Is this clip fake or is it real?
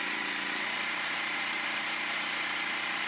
fake